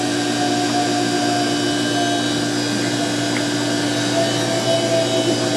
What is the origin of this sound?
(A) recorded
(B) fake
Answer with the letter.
A